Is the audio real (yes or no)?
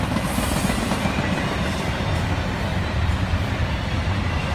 yes